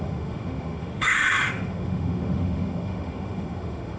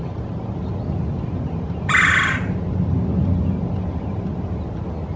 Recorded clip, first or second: second